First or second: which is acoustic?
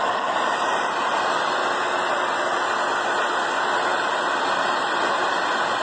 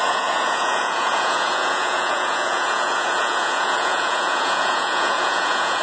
first